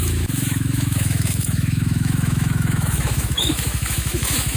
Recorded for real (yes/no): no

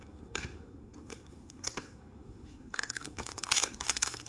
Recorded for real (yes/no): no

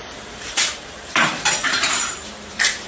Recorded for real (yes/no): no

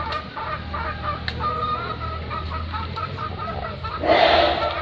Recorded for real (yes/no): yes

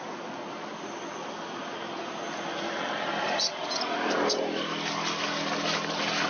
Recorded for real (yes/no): yes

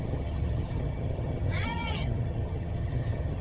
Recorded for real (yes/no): no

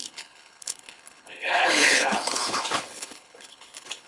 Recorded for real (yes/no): no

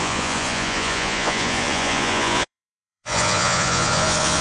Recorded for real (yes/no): no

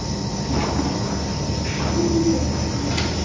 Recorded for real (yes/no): yes